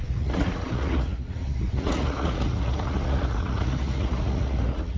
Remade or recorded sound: remade